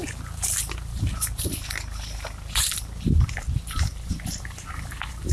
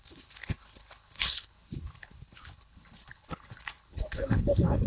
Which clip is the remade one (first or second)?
second